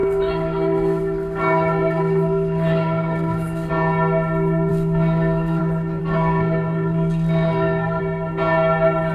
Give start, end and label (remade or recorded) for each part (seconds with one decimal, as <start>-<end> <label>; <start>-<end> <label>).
0.0-3.7 remade; 3.7-4.7 recorded; 4.7-5.6 remade; 5.6-6.0 recorded; 6.0-8.0 remade; 8.0-9.1 recorded